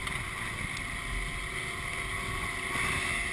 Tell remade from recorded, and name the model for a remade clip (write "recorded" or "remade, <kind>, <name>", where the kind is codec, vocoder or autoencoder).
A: recorded